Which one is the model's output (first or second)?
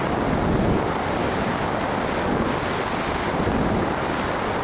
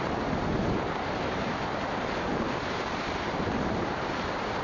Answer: second